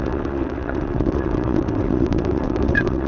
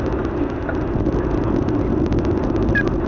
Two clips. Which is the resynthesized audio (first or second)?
first